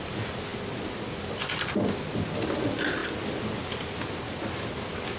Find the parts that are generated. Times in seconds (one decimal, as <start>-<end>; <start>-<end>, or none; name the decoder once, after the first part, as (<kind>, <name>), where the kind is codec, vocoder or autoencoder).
none